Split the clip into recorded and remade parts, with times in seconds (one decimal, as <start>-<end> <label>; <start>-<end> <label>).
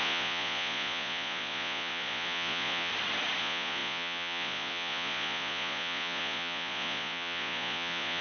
0.0-2.9 remade; 2.9-3.4 recorded; 3.4-8.2 remade